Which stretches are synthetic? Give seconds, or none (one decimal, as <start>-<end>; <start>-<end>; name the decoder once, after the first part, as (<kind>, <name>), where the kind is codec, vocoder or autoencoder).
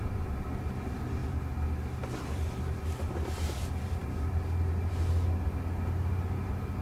1.2-3.6 (vocoder, BigVGAN v2)